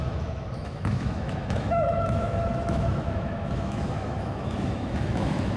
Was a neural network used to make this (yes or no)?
yes